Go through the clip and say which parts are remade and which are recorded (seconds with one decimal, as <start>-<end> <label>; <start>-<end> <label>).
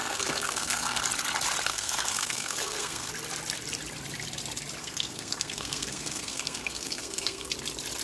0.0-1.0 remade; 1.0-1.7 recorded; 1.7-3.1 remade; 3.1-4.8 recorded; 4.8-7.5 remade; 7.5-8.0 recorded